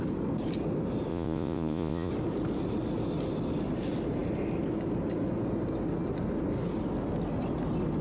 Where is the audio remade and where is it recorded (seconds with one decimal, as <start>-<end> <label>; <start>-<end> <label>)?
0.0-1.1 recorded; 1.1-2.1 remade; 2.1-8.0 recorded